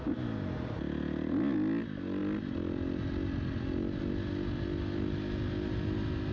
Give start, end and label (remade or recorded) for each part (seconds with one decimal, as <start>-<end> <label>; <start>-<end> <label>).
0.0-6.3 recorded